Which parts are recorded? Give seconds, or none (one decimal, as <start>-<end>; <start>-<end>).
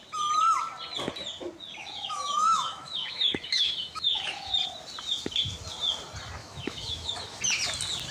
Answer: 0.0-1.8; 4.5-6.4; 7.4-8.1